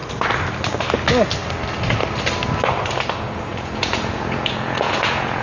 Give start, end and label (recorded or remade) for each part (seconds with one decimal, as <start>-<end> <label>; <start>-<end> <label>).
0.0-3.2 recorded; 3.2-5.4 remade